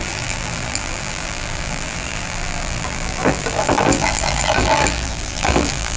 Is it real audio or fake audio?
fake